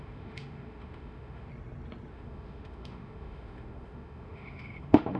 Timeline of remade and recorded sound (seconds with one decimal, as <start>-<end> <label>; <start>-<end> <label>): 0.0-1.5 remade; 1.5-2.1 recorded; 2.1-5.2 remade